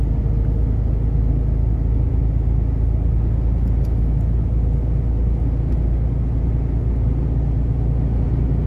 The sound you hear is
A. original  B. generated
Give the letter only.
A